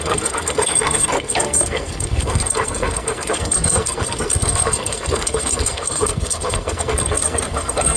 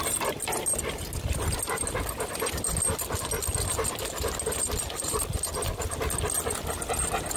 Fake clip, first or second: first